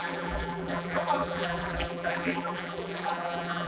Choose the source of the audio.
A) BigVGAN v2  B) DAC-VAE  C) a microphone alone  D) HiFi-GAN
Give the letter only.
A